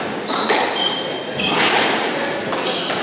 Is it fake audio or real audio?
real